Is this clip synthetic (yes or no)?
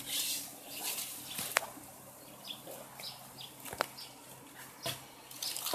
no